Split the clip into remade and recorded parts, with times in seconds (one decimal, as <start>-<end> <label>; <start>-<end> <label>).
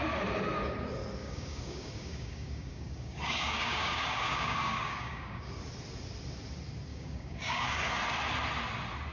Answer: 0.0-1.2 recorded; 1.2-5.6 remade; 5.6-6.9 recorded; 6.9-7.9 remade; 7.9-9.1 recorded